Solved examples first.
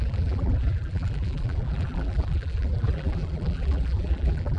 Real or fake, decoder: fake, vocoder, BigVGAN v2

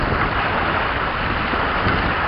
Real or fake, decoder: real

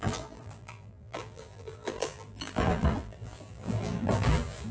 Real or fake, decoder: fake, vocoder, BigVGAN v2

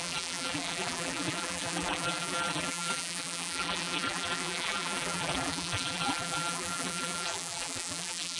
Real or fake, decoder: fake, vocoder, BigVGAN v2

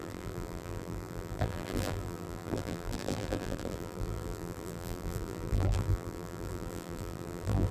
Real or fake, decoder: fake, vocoder, BigVGAN v2